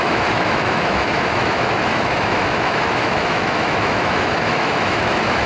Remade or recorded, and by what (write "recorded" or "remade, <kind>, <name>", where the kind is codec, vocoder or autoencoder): remade, autoencoder, DAC-VAE